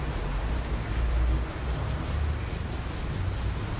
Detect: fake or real real